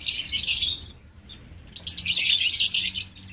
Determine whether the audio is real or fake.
real